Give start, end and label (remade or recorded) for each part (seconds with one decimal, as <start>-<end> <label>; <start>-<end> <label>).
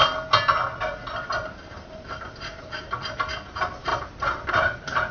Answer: 0.0-5.1 recorded